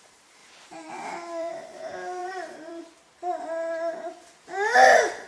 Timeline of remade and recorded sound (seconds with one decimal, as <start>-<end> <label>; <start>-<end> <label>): 0.0-0.4 recorded; 0.4-1.5 remade; 1.5-2.2 recorded; 2.2-2.8 remade; 2.8-5.3 recorded